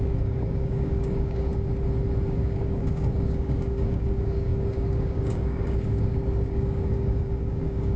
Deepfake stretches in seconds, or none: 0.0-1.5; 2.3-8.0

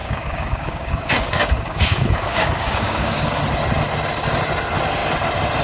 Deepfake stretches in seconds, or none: 0.0-3.4